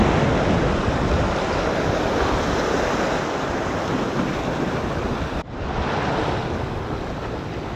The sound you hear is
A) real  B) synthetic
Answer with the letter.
A